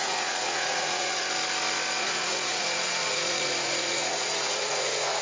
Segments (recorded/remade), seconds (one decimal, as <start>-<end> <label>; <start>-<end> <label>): 0.0-1.2 remade; 1.2-2.0 recorded; 2.0-5.2 remade

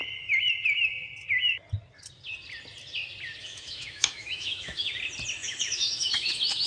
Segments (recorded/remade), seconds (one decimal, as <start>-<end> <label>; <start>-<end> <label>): 0.0-3.4 recorded; 3.4-4.9 remade; 4.9-5.4 recorded; 5.4-6.7 remade

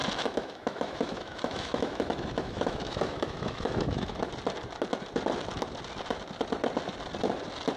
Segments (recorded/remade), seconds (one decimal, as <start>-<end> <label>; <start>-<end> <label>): 0.0-4.3 remade; 4.3-7.8 recorded

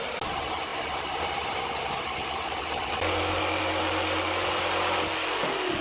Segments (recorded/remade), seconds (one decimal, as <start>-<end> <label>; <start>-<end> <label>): 0.0-5.8 recorded

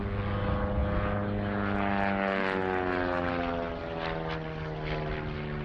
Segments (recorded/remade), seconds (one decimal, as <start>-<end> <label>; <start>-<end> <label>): 0.0-5.6 recorded

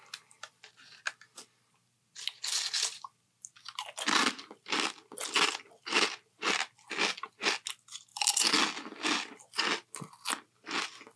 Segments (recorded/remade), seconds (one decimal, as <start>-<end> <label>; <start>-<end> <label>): 0.0-11.2 recorded

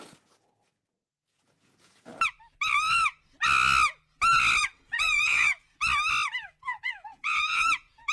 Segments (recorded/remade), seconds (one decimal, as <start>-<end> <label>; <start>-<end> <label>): 0.0-2.1 remade; 2.1-4.6 recorded; 4.6-5.8 remade; 5.8-6.4 recorded; 6.4-8.1 remade

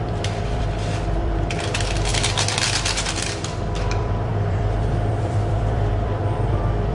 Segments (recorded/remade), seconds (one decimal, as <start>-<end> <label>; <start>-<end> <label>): 0.0-2.1 remade; 2.1-3.6 recorded; 3.6-6.9 remade